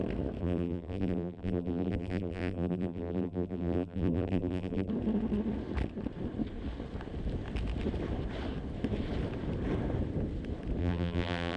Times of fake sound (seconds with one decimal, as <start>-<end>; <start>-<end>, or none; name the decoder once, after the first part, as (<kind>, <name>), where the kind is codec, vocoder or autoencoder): 0.4-4.9 (vocoder, BigVGAN v2); 10.8-11.6